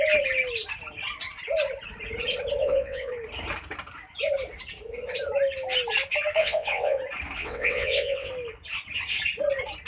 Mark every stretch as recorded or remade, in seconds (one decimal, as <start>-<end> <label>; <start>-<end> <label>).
0.0-2.6 recorded; 2.6-3.1 remade; 3.1-6.4 recorded; 6.4-7.0 remade; 7.0-7.4 recorded; 7.4-8.3 remade; 8.3-9.9 recorded

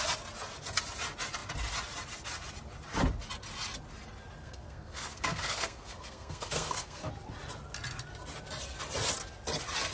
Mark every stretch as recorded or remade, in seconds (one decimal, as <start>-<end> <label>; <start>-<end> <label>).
0.0-4.4 recorded; 4.4-7.1 remade; 7.1-9.9 recorded

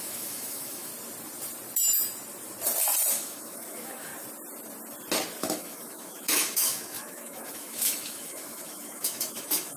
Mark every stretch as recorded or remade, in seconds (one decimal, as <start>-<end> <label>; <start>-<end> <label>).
0.0-0.9 remade; 0.9-3.1 recorded; 3.1-4.1 remade; 4.1-5.4 recorded; 5.4-9.8 remade

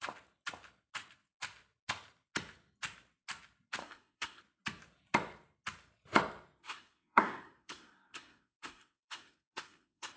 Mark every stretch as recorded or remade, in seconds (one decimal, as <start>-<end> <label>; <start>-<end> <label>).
0.0-3.8 recorded; 3.8-4.4 remade; 4.4-6.6 recorded; 6.6-10.2 remade

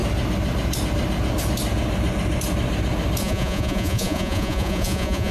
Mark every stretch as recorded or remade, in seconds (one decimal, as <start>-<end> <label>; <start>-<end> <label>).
0.0-3.2 recorded; 3.2-5.3 remade

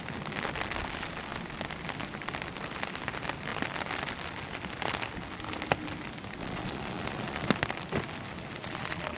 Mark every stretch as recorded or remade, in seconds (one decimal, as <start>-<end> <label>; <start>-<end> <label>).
0.0-6.4 recorded; 6.4-7.5 remade; 7.5-8.6 recorded; 8.6-9.2 remade

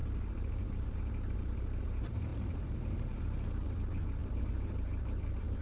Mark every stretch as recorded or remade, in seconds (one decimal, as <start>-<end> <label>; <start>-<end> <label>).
0.0-5.6 remade